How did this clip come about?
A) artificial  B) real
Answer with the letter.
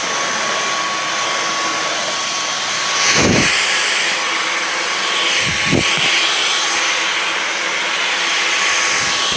B